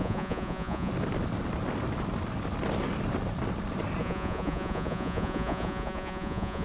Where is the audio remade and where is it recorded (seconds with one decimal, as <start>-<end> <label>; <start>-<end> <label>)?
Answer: 0.0-0.9 remade; 0.9-4.0 recorded; 4.0-6.6 remade